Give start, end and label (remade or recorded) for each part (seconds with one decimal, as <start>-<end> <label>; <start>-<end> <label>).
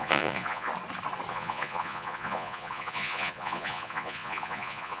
0.0-0.7 remade; 0.7-1.3 recorded; 1.3-5.0 remade